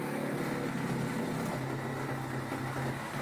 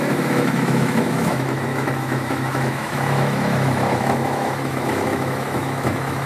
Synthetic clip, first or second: second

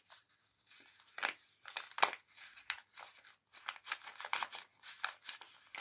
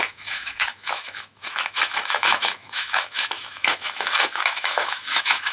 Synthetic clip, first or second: second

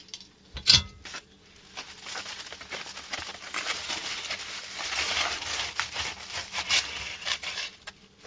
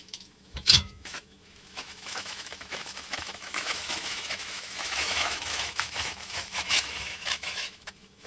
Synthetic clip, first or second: second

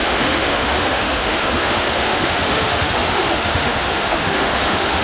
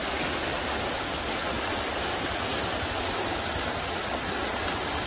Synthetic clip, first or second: first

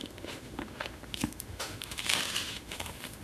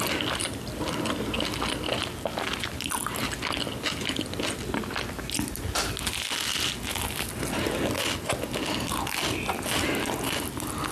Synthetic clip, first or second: first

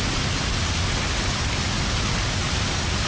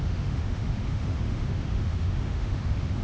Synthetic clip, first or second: second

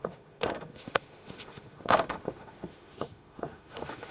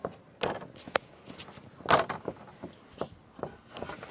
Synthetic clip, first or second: first